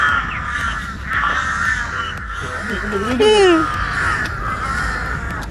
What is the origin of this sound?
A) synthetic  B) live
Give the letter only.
B